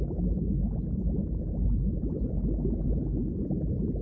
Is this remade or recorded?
recorded